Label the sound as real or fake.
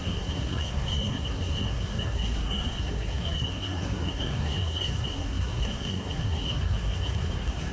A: fake